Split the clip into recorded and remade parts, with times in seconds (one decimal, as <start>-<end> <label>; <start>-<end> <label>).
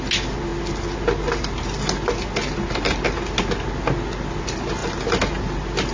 0.0-5.9 recorded